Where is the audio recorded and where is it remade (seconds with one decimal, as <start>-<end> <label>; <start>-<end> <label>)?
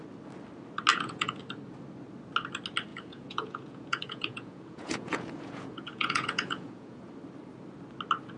0.0-0.9 recorded; 0.9-1.4 remade; 1.4-2.9 recorded; 2.9-7.1 remade; 7.1-8.4 recorded